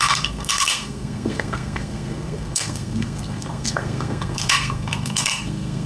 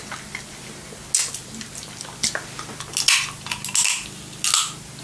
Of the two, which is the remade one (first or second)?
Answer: first